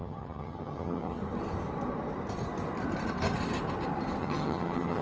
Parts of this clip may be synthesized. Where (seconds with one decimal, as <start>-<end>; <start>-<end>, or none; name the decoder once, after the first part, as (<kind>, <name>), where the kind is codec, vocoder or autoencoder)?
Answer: 0.0-1.2 (vocoder, HiFi-GAN); 4.2-5.0